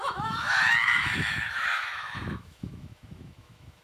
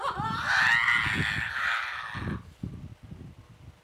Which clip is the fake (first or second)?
first